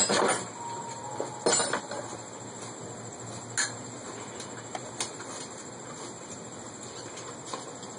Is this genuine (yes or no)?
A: yes